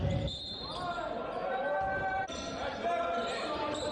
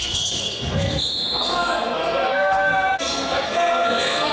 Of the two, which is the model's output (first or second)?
second